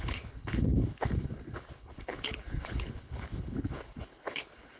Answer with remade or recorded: remade